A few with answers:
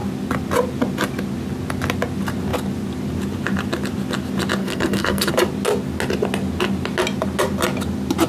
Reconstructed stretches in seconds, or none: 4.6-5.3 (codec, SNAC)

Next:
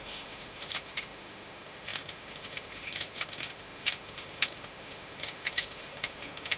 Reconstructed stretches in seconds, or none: 0.0-6.6 (autoencoder, DAC-VAE)

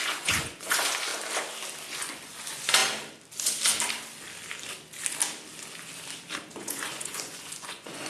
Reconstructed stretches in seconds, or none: 0.0-1.1 (vocoder, Vocos); 1.9-2.8; 6.5-8.1

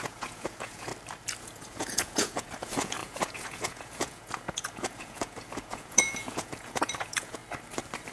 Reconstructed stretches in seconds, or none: 0.0-0.9 (vocoder, Vocos); 1.4-7.4

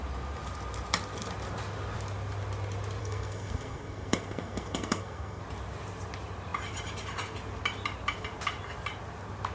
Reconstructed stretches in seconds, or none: 3.0-5.4 (codec, SNAC)